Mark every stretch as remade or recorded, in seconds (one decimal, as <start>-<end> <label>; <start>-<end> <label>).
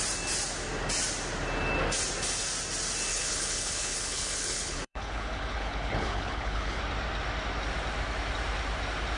0.0-3.1 recorded; 3.1-6.8 remade; 6.8-9.2 recorded